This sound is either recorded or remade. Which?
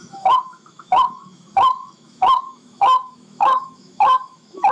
remade